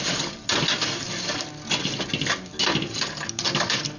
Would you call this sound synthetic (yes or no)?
no